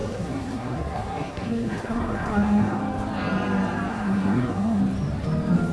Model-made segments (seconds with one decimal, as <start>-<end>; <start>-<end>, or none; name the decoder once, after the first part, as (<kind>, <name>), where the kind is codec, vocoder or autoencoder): 0.0-2.8 (codec, SNAC); 3.9-4.8